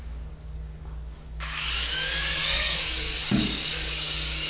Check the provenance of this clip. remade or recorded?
remade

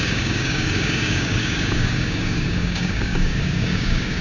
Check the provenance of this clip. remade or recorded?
remade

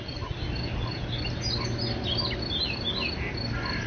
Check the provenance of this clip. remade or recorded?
recorded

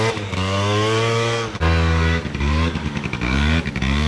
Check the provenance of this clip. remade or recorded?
remade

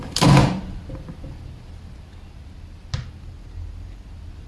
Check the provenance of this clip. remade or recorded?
recorded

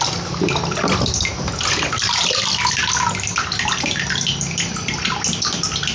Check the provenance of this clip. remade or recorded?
recorded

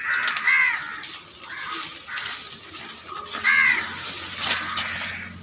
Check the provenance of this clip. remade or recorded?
recorded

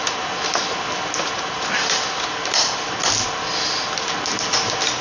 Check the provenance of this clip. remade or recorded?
recorded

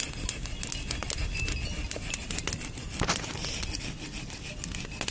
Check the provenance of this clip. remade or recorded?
recorded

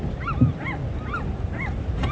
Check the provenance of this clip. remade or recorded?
recorded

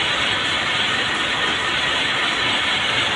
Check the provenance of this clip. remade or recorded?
recorded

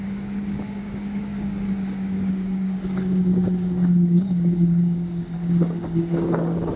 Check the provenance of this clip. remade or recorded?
remade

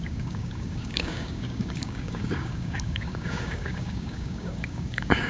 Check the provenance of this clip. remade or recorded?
remade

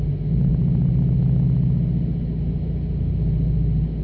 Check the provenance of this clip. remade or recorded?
recorded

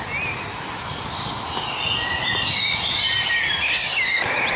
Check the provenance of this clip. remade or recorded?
recorded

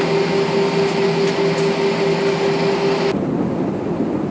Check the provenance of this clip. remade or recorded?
recorded